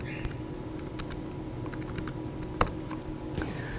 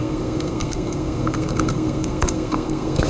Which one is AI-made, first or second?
second